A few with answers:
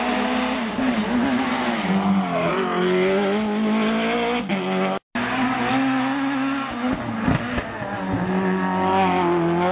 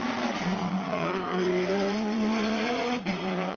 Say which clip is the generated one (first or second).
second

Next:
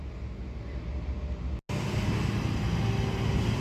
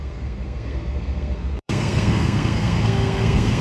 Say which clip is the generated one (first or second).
second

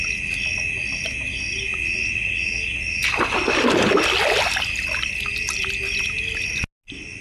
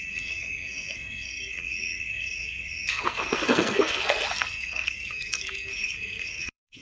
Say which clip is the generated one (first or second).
second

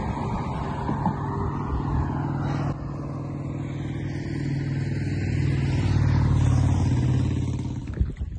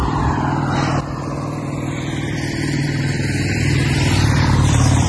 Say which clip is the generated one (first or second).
second